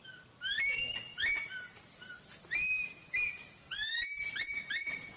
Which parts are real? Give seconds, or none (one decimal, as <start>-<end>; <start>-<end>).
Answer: 0.0-5.2